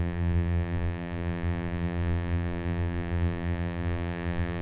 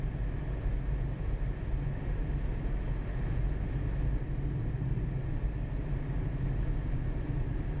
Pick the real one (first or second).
second